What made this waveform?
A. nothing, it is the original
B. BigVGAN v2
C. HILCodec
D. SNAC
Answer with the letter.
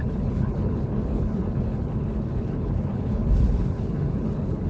C